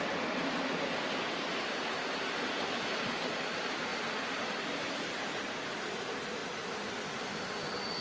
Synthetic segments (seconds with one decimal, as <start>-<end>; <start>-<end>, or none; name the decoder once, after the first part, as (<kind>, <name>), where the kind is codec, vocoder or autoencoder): 3.9-4.7 (vocoder, BigVGAN v2); 6.4-7.1